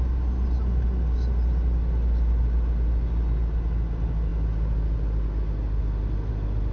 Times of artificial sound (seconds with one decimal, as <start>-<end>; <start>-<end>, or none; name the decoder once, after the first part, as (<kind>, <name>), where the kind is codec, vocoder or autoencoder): none